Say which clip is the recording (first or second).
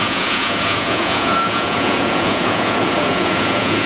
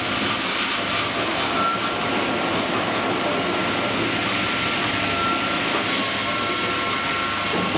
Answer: second